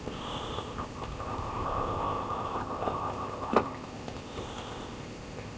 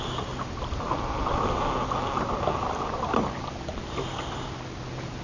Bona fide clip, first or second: second